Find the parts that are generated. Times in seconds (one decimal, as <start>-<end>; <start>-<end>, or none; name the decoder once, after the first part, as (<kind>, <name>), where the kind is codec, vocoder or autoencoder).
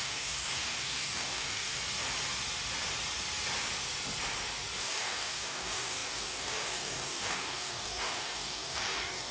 0.0-1.8 (codec, DAC); 4.8-9.3